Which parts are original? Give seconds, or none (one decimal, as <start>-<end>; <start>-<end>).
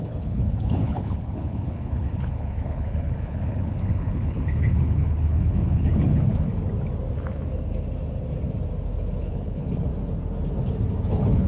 6.5-9.2; 9.9-11.1